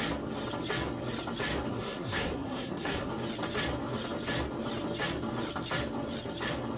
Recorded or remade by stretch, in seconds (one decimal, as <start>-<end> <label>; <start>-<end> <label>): 0.0-1.7 recorded; 1.7-3.1 remade; 3.1-6.8 recorded